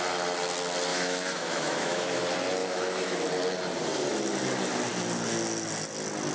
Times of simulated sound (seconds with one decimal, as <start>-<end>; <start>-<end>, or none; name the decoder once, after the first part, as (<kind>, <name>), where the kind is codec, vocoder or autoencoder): 0.9-2.2 (autoencoder, DAC-VAE); 2.6-3.2